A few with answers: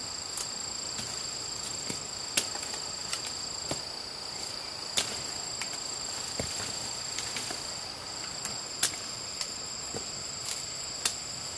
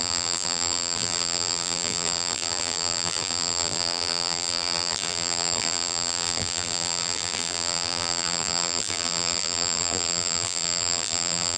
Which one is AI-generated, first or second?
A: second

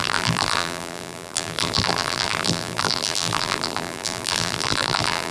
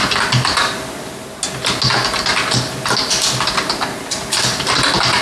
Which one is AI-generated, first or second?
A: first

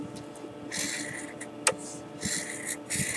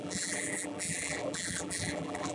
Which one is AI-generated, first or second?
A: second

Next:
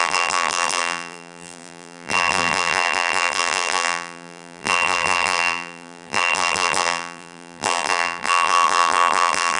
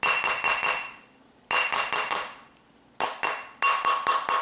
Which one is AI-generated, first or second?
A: first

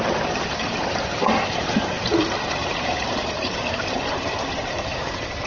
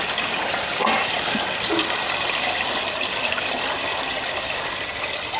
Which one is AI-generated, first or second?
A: first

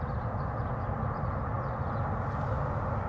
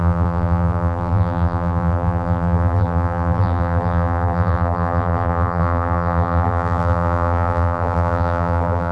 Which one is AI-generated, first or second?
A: second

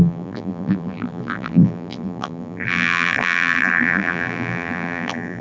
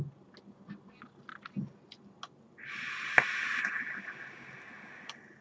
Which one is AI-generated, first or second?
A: first